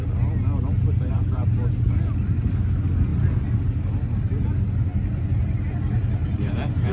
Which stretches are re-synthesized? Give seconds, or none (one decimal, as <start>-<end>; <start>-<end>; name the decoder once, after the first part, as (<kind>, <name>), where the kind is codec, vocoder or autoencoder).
0.8-1.8 (vocoder, BigVGAN v2); 3.1-3.8; 6.2-6.9

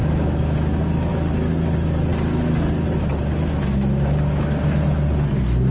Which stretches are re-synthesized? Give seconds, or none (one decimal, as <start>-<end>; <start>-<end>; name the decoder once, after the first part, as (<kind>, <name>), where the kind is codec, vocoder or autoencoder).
none

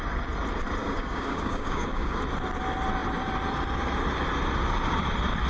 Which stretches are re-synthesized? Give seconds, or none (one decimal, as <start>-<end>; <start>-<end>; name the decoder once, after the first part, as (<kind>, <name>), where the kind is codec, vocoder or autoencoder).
0.8-2.2 (codec, DAC)

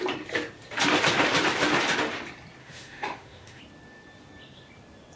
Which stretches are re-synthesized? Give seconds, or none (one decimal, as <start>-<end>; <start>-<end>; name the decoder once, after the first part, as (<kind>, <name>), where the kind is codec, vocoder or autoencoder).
2.6-3.6 (autoencoder, DAC-VAE)

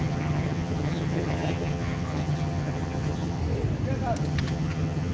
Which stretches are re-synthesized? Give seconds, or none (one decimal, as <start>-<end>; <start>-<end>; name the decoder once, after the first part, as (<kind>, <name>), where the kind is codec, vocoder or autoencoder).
0.0-3.4 (vocoder, HiFi-GAN); 4.2-5.1